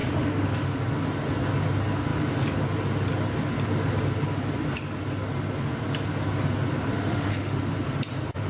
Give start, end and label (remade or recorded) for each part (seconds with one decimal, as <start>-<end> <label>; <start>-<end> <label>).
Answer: 0.0-0.7 remade; 0.7-6.9 recorded; 6.9-7.6 remade; 7.6-8.5 recorded